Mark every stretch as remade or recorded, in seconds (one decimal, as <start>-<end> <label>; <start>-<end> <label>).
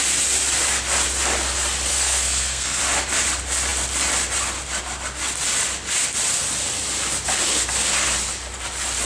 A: 0.0-1.9 recorded; 1.9-2.8 remade; 2.8-9.0 recorded